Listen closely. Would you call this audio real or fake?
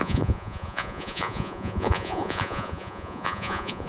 fake